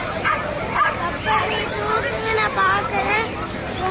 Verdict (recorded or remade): remade